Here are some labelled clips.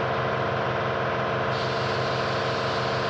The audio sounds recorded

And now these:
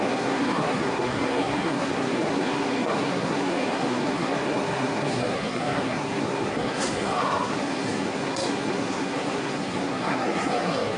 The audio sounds remade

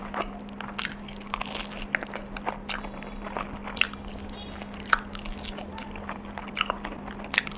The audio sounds recorded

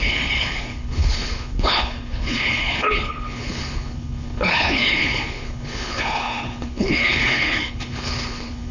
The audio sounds remade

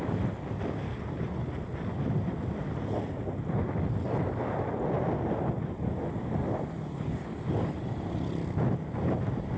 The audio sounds recorded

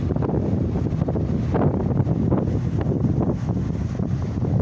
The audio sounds recorded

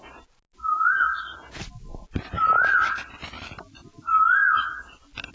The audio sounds recorded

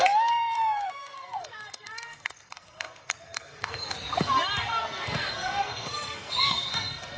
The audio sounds remade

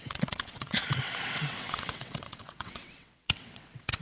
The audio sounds remade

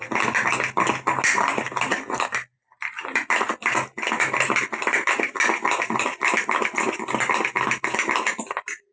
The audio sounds recorded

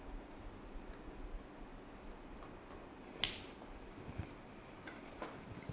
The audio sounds recorded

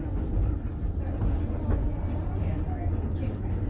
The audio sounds recorded